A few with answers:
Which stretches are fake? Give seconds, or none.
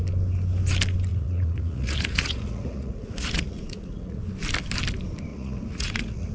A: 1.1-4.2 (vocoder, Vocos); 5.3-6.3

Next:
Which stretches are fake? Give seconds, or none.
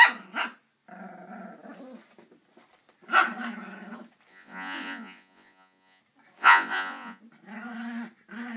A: 4.3-6.0 (vocoder, Vocos); 6.4-7.2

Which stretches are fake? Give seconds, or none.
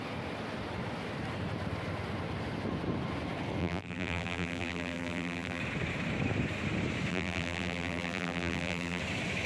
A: 3.6-5.6 (vocoder, BigVGAN v2); 7.1-9.0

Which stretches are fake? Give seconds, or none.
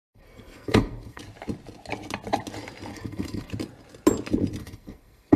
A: 0.0-1.2 (codec, SNAC); 2.9-3.5; 4.6-5.4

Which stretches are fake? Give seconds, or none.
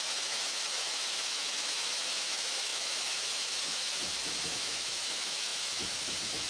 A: 0.0-6.5 (autoencoder, DAC-VAE)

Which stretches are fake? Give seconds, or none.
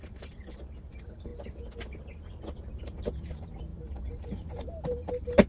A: 0.0-1.3 (vocoder, BigVGAN v2); 2.8-5.5